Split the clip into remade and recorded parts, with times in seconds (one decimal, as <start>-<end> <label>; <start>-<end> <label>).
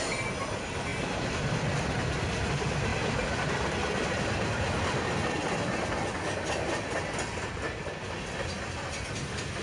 0.0-9.6 recorded